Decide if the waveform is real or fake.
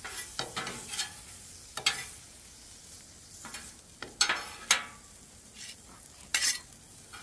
real